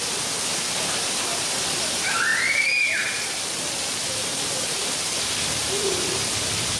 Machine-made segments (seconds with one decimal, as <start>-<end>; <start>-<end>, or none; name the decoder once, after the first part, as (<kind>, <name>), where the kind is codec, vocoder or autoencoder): 1.3-1.9 (vocoder, BigVGAN v2); 2.3-4.1